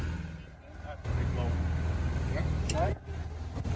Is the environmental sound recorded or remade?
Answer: recorded